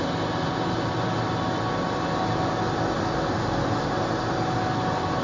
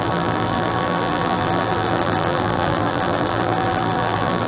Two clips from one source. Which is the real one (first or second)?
first